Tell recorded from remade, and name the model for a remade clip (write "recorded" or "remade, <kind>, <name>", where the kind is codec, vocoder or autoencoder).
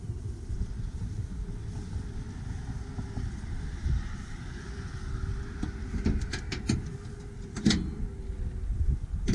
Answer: recorded